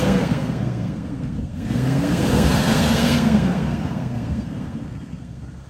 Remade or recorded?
remade